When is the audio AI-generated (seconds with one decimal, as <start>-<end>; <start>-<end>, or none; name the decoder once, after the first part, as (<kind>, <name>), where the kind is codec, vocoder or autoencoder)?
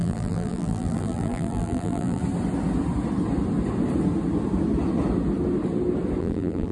0.0-2.2 (vocoder, BigVGAN v2); 6.2-6.7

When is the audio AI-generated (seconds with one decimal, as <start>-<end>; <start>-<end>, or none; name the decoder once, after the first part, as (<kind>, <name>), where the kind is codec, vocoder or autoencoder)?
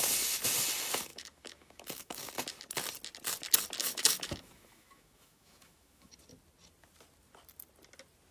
1.1-2.3 (autoencoder, DAC-VAE); 3.8-6.1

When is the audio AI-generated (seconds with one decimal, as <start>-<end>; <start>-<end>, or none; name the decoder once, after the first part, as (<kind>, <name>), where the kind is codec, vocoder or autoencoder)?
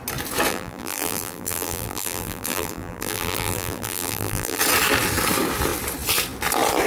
0.5-4.6 (vocoder, BigVGAN v2)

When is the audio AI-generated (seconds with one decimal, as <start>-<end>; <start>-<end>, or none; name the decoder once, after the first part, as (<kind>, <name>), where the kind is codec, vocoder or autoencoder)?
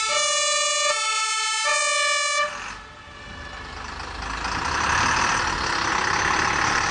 none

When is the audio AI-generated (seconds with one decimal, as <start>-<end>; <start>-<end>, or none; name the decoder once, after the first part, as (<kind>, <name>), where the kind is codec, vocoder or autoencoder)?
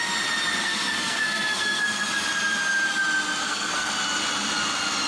0.6-2.1 (codec, SNAC); 3.4-3.9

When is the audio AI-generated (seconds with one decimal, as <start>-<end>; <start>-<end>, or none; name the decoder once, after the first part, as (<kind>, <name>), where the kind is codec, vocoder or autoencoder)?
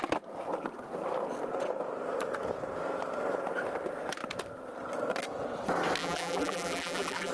6.0-7.3 (vocoder, BigVGAN v2)